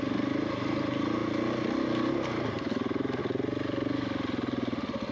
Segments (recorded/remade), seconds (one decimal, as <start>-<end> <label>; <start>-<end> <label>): 0.0-5.1 recorded